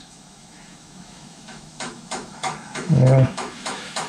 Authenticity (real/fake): fake